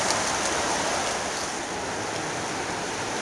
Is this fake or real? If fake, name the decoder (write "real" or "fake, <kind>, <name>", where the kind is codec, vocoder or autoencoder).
real